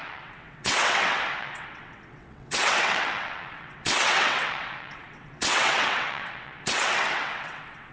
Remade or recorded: remade